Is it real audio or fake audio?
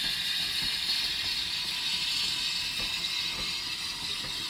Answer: real